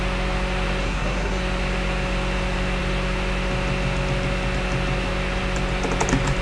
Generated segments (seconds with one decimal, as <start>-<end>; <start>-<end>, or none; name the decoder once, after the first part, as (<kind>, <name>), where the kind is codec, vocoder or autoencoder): 0.8-1.4 (codec, SNAC)